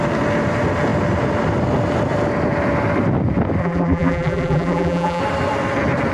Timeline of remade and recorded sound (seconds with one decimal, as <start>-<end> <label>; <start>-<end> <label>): 0.0-3.6 recorded; 3.6-5.2 remade; 5.2-6.1 recorded